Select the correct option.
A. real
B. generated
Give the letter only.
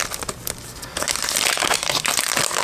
A